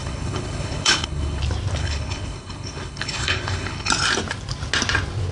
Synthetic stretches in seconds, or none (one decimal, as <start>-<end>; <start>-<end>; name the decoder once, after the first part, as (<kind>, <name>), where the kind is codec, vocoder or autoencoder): 0.0-1.4 (codec, HILCodec); 1.8-3.9